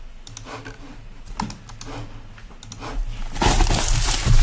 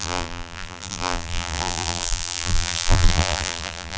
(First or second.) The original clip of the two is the first